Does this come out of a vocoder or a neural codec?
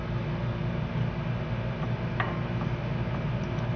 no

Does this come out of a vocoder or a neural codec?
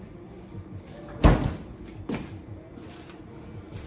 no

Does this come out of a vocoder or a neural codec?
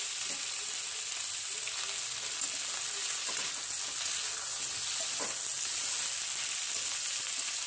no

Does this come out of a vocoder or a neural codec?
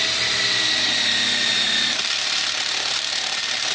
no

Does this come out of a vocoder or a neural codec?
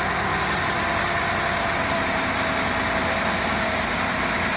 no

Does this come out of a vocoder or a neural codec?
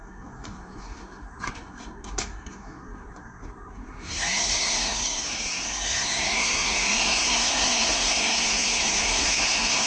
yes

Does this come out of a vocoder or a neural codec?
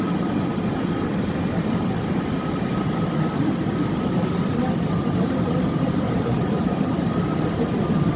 yes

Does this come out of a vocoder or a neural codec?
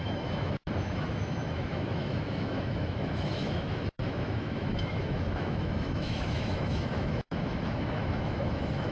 yes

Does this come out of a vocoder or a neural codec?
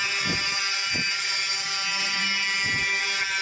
yes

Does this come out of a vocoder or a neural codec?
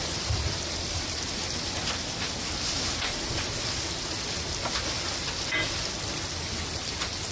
no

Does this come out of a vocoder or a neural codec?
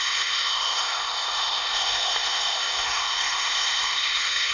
yes